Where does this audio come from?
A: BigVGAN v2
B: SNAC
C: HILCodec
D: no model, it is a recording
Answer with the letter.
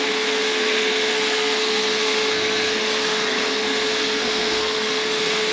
B